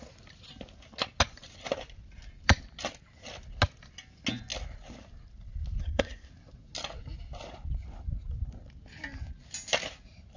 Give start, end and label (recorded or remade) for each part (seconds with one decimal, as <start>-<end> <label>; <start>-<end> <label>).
0.0-5.8 recorded; 5.8-6.3 remade; 6.3-10.4 recorded